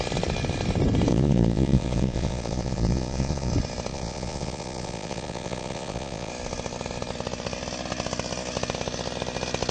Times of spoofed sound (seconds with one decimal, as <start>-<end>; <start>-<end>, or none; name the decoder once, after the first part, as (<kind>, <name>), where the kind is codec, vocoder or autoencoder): 1.1-3.5 (vocoder, Vocos); 3.9-6.3